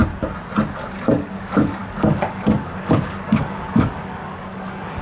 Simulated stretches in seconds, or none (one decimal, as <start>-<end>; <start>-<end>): 1.1-5.0